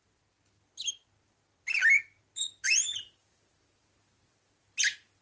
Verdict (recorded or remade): recorded